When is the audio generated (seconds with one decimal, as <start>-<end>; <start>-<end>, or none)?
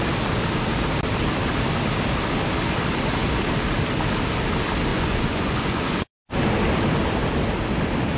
4.9-6.1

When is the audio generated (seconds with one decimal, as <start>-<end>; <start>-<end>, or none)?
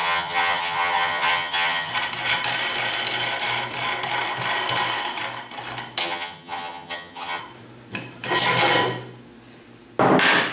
0.0-1.9; 6.0-7.4